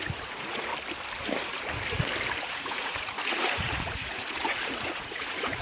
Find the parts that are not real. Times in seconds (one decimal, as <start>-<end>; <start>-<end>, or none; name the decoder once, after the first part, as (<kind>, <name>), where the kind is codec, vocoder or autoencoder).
0.0-0.7 (vocoder, Vocos); 2.4-5.6